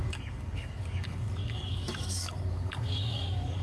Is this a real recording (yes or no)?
no